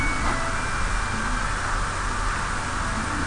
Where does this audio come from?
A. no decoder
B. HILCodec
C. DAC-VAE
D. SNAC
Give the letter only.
A